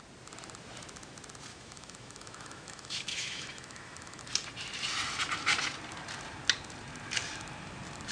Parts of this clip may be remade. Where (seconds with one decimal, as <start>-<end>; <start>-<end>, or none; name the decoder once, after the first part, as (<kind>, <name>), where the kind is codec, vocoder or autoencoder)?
1.5-4.2 (autoencoder, DAC-VAE)